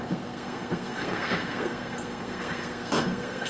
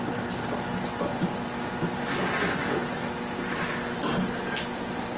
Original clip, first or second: second